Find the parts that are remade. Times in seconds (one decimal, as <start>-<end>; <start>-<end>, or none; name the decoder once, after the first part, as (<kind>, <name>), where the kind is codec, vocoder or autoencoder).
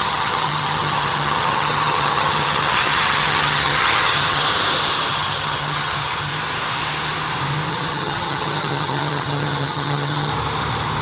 0.0-4.4 (vocoder, HiFi-GAN); 5.1-6.3; 7.7-10.3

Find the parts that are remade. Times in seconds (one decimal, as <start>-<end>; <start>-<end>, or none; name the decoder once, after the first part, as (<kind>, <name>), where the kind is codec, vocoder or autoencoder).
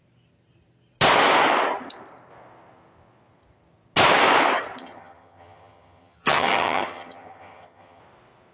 4.8-8.0 (vocoder, HiFi-GAN)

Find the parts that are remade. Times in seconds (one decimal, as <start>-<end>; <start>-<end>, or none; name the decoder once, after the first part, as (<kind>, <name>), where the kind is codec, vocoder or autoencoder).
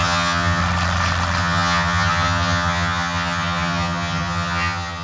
0.0-0.6 (vocoder, HiFi-GAN); 1.4-5.0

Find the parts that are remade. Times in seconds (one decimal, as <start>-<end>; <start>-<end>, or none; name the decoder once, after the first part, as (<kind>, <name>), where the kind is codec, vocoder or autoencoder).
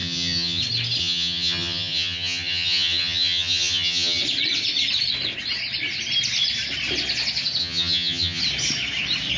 0.0-0.6 (vocoder, HiFi-GAN); 1.0-4.2; 7.6-8.4